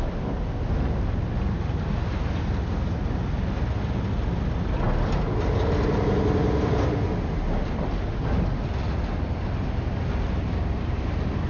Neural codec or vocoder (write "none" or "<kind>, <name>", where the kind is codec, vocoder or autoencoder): none